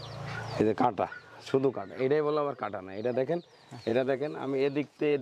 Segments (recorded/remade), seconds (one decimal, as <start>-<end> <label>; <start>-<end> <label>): 0.0-3.9 recorded; 3.9-5.2 remade